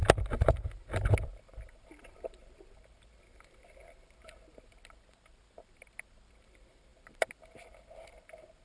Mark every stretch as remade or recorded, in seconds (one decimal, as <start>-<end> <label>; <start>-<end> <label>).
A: 0.0-8.6 recorded